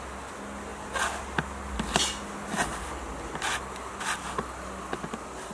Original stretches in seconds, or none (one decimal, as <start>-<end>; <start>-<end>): 0.0-5.5